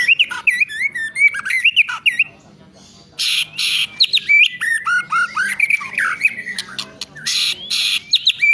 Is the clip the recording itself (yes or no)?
yes